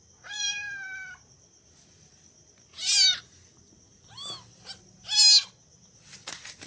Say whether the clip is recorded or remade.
recorded